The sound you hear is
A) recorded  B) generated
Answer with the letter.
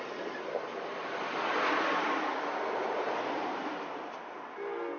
A